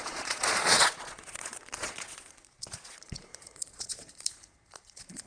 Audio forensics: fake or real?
fake